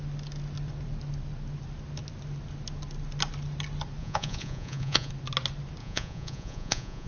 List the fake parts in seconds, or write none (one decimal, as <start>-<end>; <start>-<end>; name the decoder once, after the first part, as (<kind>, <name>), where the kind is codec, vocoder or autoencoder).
4.0-5.1 (vocoder, Vocos); 5.8-7.1